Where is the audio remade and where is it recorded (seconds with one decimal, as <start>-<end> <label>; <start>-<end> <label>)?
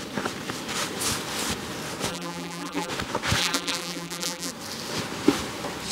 0.0-2.1 recorded; 2.1-2.9 remade; 2.9-3.4 recorded; 3.4-4.5 remade; 4.5-5.9 recorded